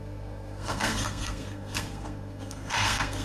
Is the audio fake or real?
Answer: fake